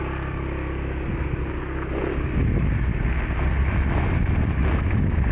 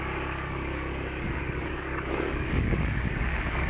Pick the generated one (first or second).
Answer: second